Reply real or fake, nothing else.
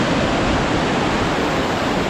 real